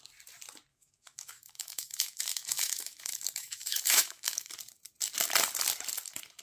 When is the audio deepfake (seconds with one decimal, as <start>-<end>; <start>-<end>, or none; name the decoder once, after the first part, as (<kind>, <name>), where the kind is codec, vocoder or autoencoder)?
0.7-4.5 (autoencoder, DAC-VAE)